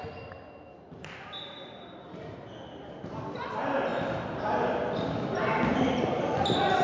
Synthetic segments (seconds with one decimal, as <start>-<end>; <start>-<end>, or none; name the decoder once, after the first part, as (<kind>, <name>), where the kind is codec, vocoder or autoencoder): none

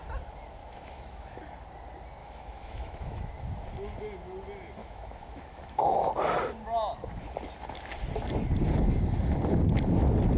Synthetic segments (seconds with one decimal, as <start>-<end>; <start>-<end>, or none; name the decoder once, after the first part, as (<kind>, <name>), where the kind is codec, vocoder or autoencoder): 0.6-1.4 (autoencoder, DAC-VAE); 2.2-3.3; 4.8-6.1

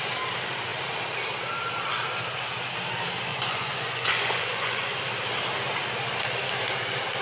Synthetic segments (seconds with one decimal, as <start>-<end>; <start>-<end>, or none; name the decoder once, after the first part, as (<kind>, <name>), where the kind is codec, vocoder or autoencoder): 3.3-5.0 (vocoder, Vocos)

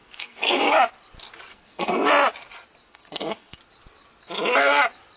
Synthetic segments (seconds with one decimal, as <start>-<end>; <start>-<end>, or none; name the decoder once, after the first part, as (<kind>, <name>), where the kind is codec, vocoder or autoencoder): 0.0-0.6 (codec, SNAC); 1.5-2.1; 2.9-3.6